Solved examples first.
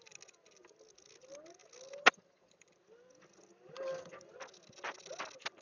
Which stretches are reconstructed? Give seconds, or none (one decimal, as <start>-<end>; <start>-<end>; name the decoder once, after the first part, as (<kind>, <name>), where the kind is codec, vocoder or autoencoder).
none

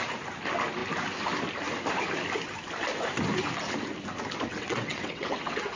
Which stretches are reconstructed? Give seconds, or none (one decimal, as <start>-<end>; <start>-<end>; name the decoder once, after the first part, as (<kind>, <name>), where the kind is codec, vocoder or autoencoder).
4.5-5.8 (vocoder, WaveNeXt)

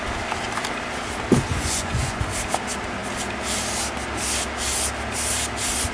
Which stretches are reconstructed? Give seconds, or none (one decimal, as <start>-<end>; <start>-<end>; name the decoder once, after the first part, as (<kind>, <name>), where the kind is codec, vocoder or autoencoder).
1.5-2.2 (vocoder, Vocos)